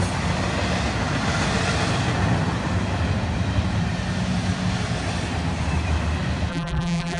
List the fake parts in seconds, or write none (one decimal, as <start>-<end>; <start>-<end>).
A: 6.5-7.2